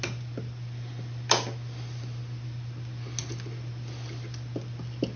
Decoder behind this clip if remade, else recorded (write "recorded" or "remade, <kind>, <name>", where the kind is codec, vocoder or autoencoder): recorded